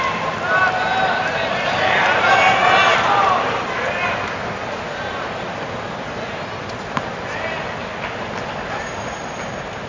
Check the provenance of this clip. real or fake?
real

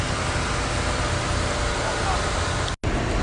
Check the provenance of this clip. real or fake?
real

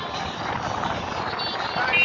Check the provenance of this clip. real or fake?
real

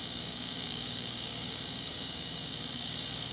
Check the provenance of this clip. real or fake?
fake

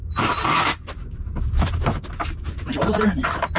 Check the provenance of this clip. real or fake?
fake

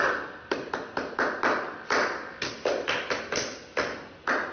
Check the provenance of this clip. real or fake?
real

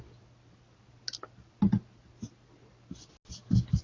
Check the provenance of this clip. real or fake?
real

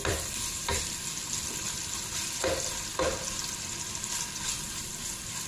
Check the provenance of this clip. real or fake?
fake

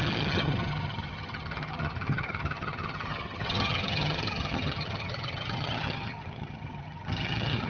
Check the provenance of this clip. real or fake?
fake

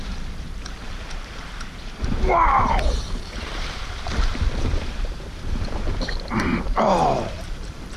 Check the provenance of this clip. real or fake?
fake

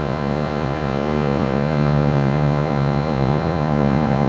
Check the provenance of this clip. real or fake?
fake